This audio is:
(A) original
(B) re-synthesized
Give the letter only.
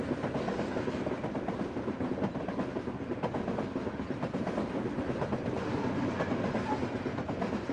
A